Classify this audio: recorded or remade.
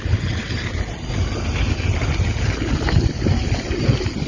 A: recorded